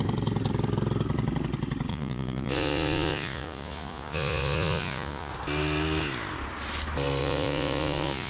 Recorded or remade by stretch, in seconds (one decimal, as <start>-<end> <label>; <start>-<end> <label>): 0.0-1.9 recorded; 1.9-5.3 remade; 5.3-7.2 recorded; 7.2-8.3 remade